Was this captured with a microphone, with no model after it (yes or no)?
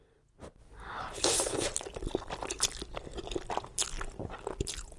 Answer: yes